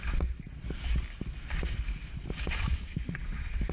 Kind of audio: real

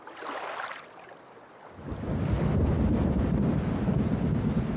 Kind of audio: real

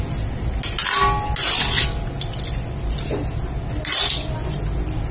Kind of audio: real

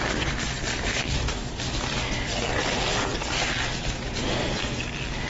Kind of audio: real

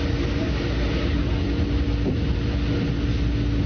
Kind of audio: real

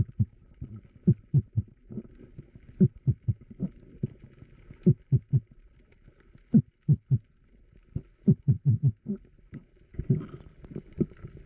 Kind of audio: real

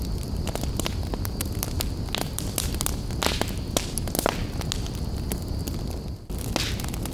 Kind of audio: real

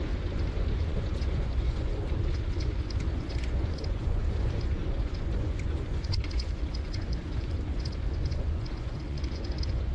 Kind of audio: fake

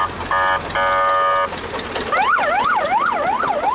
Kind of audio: real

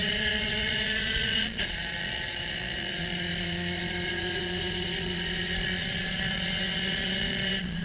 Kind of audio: fake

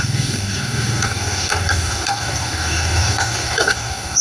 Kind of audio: fake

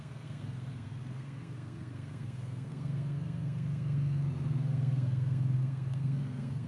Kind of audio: fake